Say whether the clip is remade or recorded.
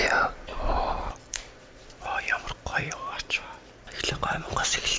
remade